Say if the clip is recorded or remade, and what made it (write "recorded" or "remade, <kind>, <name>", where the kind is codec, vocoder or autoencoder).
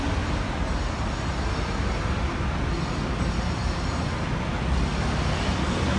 recorded